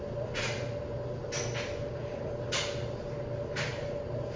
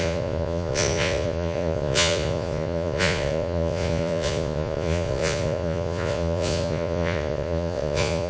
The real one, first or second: first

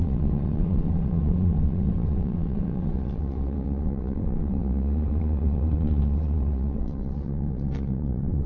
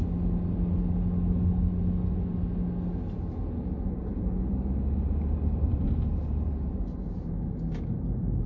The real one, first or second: second